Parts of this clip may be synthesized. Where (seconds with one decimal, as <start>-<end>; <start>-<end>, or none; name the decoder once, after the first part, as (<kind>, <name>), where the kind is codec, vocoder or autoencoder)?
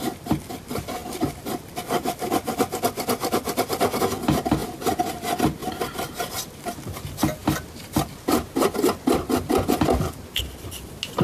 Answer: 5.6-6.3 (vocoder, BigVGAN v2); 7.4-9.9